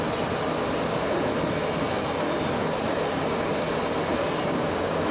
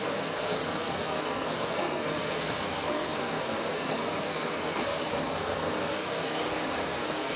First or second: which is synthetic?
second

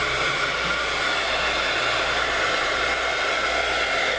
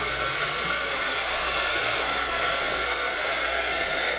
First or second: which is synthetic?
second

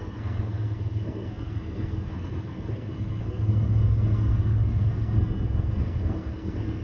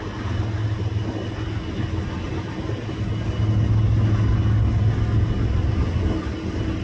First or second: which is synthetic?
first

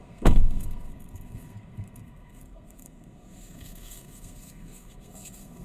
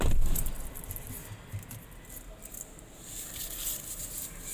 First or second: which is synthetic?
first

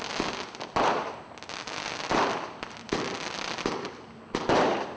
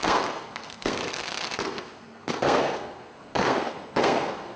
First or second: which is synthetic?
second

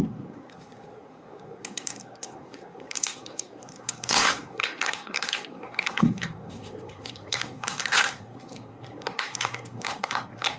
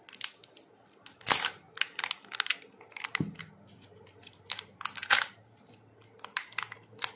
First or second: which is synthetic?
first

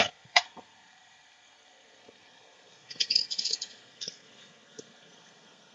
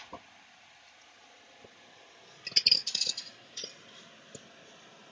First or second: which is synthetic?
first